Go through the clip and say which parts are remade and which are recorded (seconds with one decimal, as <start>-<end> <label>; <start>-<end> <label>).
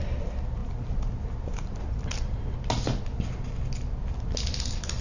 0.0-5.0 recorded